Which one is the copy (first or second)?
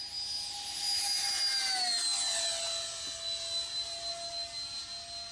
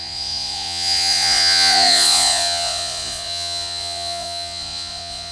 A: second